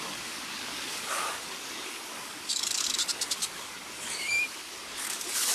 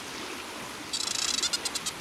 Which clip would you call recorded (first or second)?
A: second